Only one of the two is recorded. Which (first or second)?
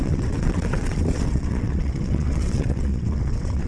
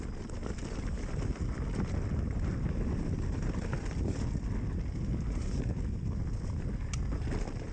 second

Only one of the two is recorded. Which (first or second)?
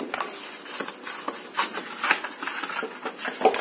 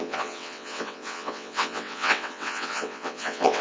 first